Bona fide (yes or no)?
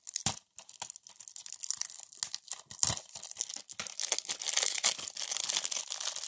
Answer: yes